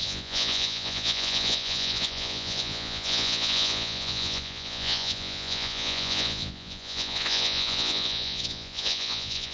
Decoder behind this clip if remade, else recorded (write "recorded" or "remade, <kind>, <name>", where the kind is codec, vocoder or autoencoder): remade, vocoder, Vocos